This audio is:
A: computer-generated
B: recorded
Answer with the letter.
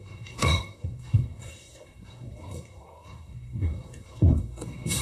A